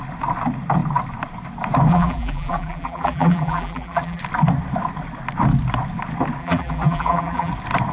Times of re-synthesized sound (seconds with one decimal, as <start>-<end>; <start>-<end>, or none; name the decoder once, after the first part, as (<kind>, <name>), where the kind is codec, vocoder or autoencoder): 1.9-4.2 (vocoder, BigVGAN v2); 6.4-7.5